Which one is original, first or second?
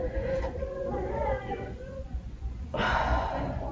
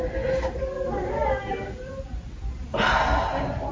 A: second